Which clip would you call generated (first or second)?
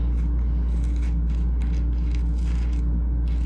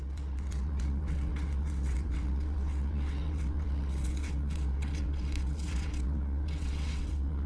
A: second